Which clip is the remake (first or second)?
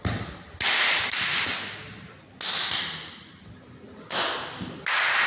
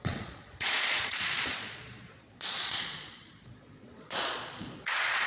second